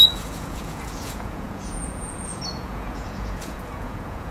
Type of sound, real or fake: fake